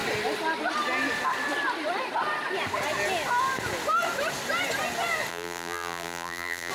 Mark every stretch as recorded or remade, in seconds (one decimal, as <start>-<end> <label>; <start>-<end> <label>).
0.0-5.3 recorded; 5.3-6.7 remade